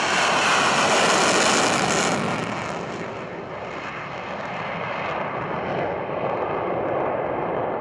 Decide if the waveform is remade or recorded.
recorded